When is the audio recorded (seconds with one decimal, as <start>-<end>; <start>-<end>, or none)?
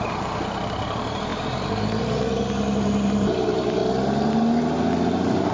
3.8-5.5